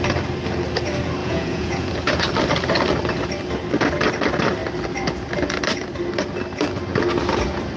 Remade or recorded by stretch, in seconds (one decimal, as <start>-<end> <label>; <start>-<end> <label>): 0.0-1.2 recorded; 1.2-1.9 remade; 1.9-7.8 recorded